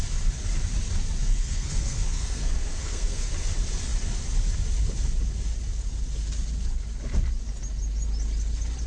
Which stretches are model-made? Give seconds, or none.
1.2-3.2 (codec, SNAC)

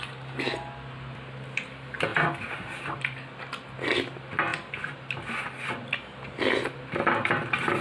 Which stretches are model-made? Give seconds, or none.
none